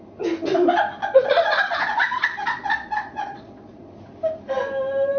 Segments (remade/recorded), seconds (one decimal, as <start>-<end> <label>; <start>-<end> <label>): 0.0-1.0 recorded; 1.0-3.8 remade; 3.8-5.2 recorded